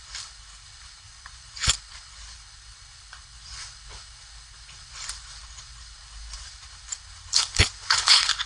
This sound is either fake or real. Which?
fake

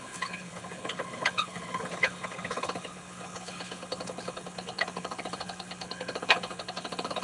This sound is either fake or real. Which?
fake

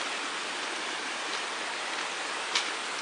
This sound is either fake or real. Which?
real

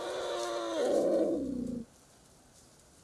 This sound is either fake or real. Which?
real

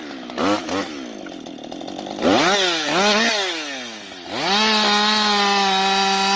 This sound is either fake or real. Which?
real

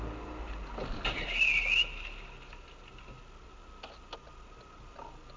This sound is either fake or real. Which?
real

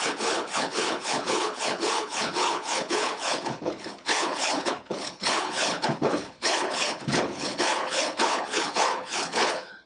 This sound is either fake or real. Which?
fake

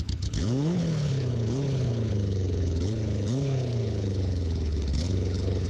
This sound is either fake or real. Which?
fake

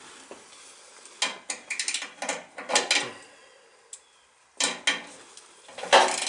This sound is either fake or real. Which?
real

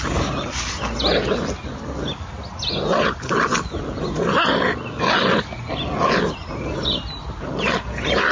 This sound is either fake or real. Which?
real